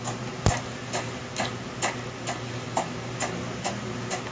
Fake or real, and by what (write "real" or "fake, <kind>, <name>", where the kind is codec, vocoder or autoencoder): real